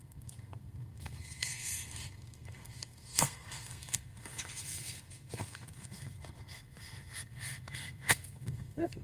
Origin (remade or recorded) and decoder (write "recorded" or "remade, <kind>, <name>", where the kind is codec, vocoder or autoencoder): remade, codec, SNAC